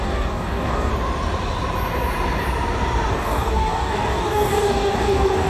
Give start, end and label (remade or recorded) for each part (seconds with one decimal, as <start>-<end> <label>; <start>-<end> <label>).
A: 0.0-0.9 remade; 0.9-3.1 recorded; 3.1-5.5 remade